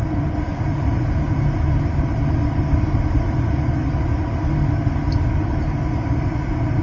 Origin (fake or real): real